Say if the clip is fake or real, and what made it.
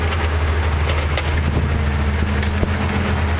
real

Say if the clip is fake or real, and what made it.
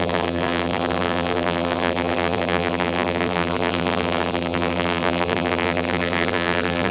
fake, vocoder, BigVGAN v2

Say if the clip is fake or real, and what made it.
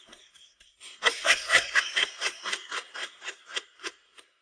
fake, codec, SNAC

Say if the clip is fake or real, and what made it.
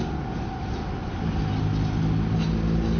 real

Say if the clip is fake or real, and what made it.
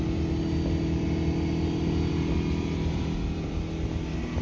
real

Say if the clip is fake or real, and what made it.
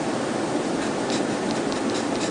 real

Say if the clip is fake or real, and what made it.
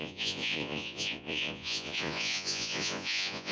fake, vocoder, Vocos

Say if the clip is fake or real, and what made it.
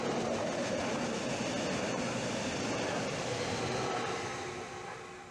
real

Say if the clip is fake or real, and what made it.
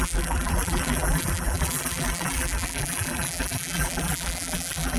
fake, vocoder, BigVGAN v2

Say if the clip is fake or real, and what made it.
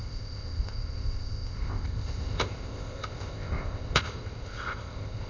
fake, codec, ZipCodec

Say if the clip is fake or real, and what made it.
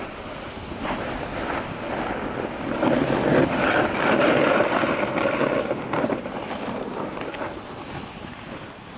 real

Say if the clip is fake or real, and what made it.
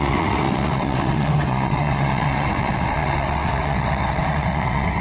fake, vocoder, WaveNeXt